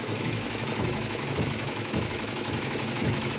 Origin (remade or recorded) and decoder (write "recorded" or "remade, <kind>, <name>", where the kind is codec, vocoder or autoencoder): remade, autoencoder, DAC-VAE